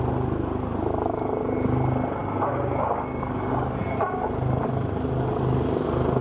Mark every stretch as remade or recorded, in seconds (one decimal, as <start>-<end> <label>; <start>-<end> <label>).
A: 0.0-2.2 recorded; 2.2-3.8 remade; 3.8-6.2 recorded